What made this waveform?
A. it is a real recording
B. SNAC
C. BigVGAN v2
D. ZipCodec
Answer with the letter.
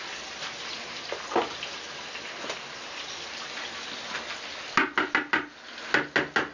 A